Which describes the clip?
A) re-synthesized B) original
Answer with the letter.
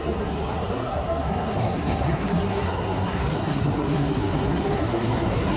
A